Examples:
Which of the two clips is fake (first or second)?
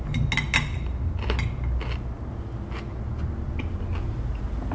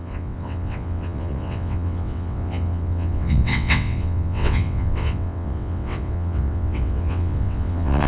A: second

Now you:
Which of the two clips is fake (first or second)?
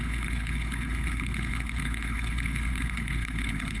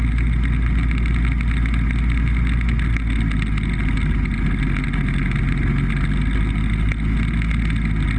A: first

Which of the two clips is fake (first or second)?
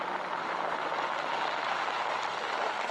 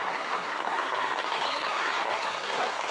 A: second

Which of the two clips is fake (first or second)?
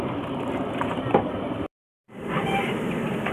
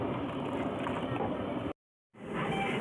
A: first